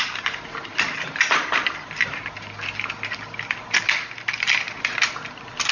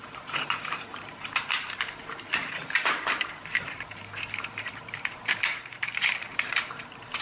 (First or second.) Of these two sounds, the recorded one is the first